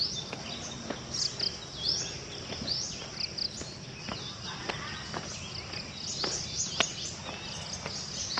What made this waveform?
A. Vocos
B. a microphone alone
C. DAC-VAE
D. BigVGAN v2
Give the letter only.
B